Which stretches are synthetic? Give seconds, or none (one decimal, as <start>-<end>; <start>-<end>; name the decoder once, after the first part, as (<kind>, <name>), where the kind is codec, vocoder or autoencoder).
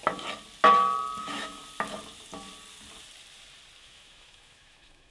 1.2-1.6 (autoencoder, DAC-VAE); 3.8-5.1